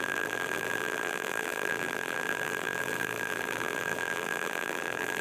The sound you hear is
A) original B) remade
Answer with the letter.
B